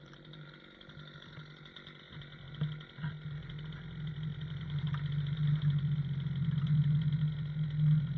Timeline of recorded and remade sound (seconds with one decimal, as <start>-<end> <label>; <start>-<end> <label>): 0.0-4.3 recorded; 4.3-5.2 remade; 5.2-8.2 recorded